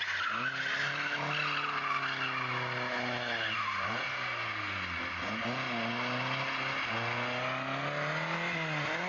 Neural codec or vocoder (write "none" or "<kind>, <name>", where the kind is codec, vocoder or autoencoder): none